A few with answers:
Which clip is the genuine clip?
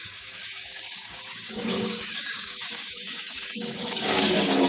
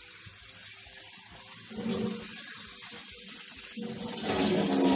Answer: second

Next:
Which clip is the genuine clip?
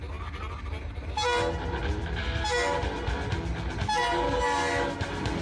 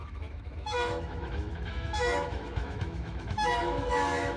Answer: first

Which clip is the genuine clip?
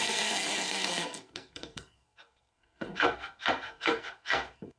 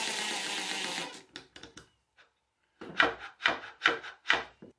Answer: second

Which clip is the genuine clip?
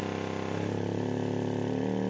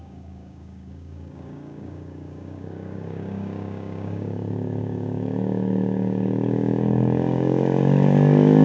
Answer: first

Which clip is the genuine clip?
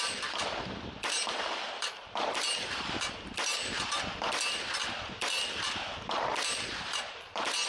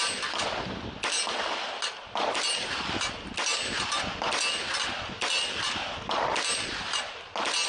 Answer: second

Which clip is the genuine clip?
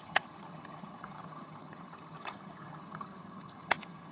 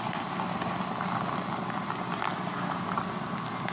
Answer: second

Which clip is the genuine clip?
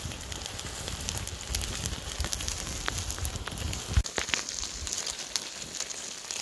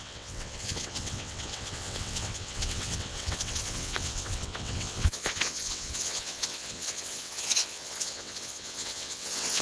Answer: first